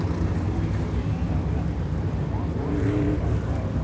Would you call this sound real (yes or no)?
yes